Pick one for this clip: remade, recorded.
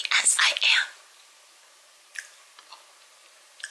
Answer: recorded